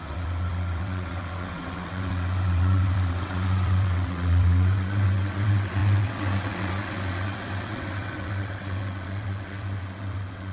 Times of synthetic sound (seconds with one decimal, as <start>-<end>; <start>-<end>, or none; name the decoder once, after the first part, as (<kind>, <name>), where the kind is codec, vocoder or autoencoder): 0.0-10.5 (vocoder, WaveNeXt)